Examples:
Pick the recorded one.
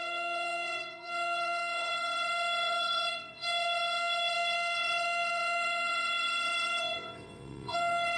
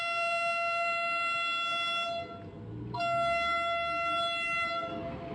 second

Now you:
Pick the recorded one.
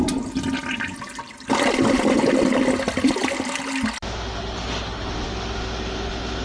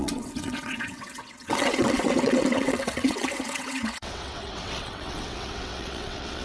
first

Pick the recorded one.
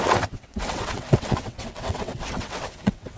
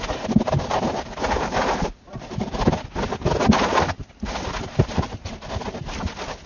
second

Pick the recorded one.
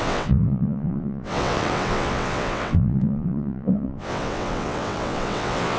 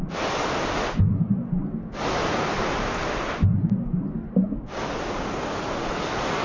second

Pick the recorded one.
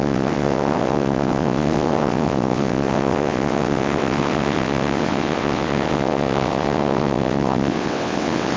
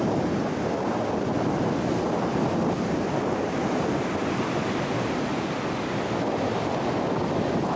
second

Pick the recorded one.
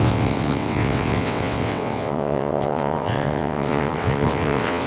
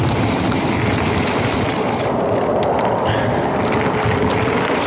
second